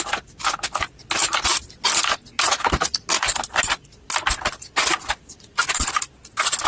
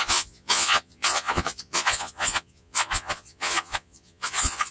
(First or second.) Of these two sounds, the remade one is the second